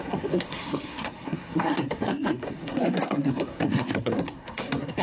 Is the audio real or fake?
fake